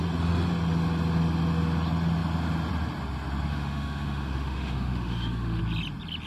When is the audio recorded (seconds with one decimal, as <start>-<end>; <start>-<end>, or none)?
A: 0.0-3.5; 5.6-6.3